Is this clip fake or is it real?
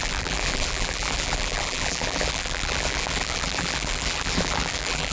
fake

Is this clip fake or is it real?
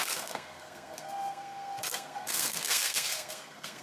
fake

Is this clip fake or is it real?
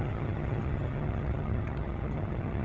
fake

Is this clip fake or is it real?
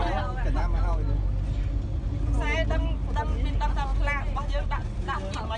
real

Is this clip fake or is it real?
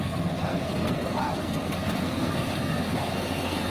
fake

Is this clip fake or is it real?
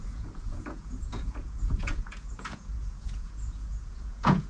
fake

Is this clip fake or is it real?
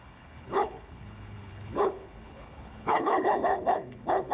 fake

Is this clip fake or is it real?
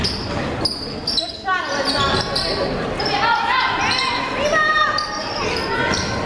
real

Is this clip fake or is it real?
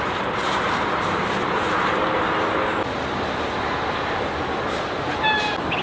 real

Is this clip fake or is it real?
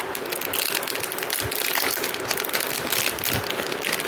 real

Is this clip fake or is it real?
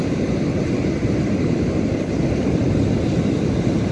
real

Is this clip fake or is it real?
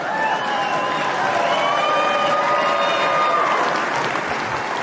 real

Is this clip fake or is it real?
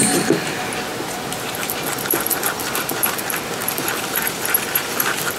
fake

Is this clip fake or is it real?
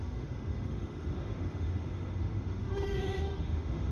fake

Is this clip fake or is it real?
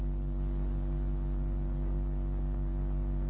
real